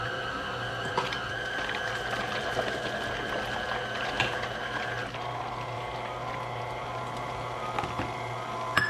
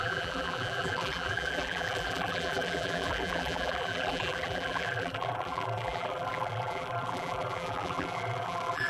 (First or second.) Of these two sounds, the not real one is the second